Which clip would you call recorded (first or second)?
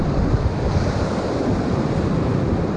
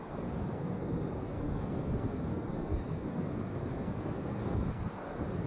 first